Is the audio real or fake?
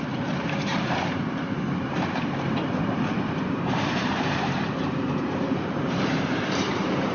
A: fake